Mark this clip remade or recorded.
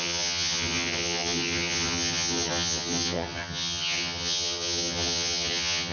remade